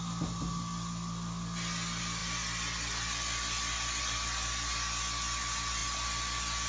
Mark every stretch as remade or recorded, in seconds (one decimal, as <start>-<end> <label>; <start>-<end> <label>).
0.0-6.7 recorded